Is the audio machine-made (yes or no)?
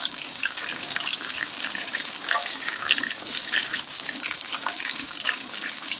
yes